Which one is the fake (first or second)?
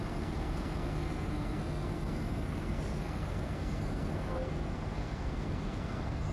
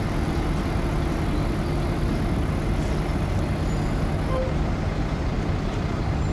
first